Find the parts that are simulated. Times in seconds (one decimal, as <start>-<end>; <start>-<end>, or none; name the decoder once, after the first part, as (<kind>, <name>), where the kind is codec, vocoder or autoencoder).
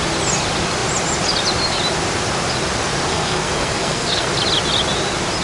3.1-4.3 (codec, SNAC)